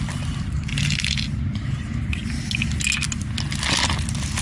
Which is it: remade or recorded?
recorded